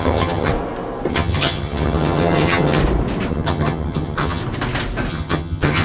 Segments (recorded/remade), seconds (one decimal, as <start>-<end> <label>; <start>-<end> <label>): 0.0-0.5 remade; 0.5-1.1 recorded; 1.1-2.8 remade; 2.8-3.3 recorded; 3.3-4.4 remade; 4.4-5.1 recorded; 5.1-5.8 remade